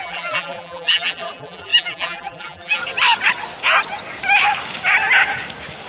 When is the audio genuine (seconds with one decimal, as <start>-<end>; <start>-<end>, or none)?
2.8-5.9